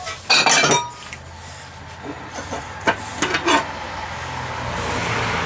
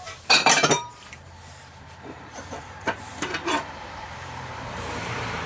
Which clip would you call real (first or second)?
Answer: first